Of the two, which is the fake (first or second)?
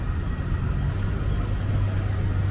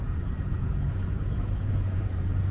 second